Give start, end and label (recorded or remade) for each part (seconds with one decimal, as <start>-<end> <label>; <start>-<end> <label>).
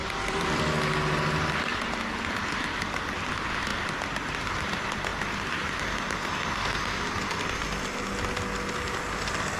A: 0.0-0.6 remade; 0.6-1.7 recorded; 1.7-3.3 remade; 3.3-9.6 recorded